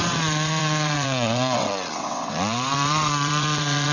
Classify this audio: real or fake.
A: fake